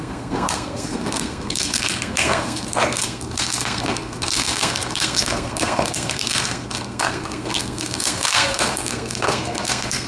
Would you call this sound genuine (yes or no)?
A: no